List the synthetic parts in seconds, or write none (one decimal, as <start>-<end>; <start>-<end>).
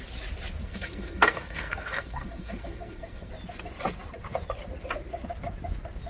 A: 0.6-3.3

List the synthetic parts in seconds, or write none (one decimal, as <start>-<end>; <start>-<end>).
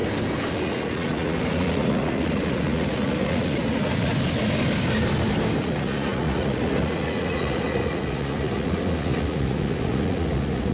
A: 0.5-4.1; 5.6-10.7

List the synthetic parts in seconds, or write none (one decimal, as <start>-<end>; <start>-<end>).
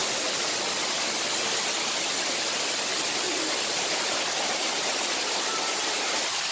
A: none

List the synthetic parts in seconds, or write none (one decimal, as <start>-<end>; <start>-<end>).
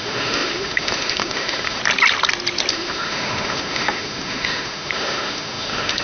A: 0.0-1.8; 2.7-6.0